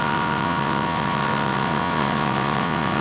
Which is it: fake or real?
fake